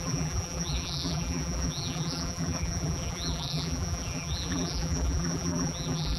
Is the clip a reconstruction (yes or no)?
yes